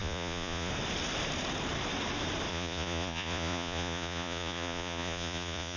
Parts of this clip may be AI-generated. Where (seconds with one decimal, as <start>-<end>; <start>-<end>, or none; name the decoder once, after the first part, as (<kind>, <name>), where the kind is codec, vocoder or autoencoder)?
0.0-0.7 (vocoder, Vocos); 2.5-5.8